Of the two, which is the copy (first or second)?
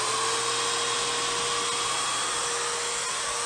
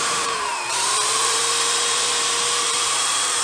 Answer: second